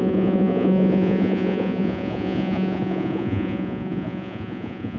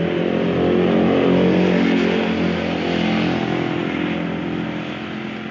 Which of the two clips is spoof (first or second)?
first